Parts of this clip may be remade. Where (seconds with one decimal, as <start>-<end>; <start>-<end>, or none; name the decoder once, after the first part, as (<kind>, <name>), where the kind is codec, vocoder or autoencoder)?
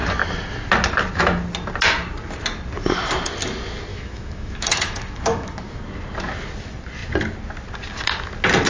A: 3.9-5.8 (autoencoder, DAC-VAE)